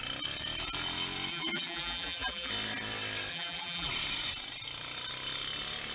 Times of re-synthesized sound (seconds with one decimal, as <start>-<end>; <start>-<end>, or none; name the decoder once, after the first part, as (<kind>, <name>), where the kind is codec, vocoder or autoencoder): 1.3-2.5 (vocoder, BigVGAN v2); 3.3-3.9